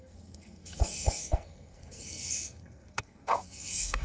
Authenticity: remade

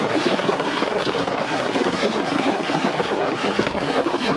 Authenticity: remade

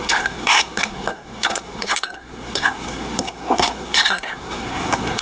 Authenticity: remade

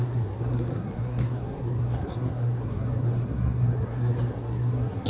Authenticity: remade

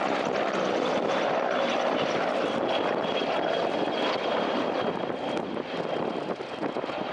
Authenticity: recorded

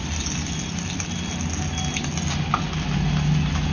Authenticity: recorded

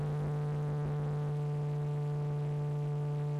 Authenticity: recorded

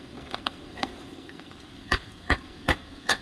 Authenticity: remade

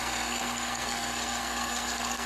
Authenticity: remade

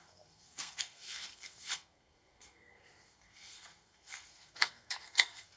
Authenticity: remade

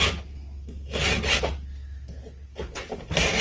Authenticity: recorded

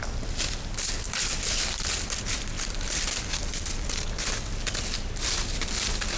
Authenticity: recorded